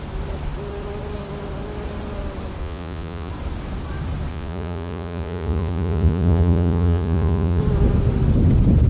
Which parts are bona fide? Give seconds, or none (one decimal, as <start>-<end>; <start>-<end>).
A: 0.0-2.6; 3.3-4.3; 7.6-8.9